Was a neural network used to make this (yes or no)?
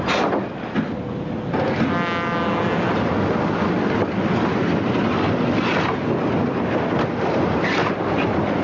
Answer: no